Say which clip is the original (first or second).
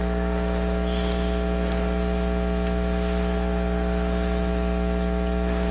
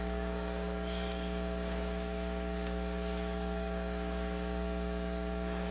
first